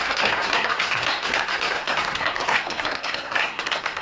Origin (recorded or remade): remade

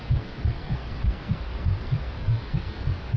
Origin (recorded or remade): remade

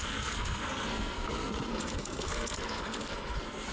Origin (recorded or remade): remade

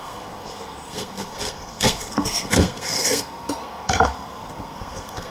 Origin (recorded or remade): remade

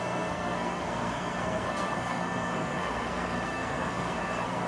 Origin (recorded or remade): remade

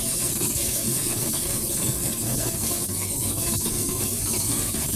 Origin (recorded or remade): remade